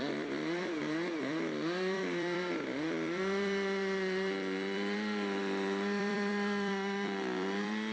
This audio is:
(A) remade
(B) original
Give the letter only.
A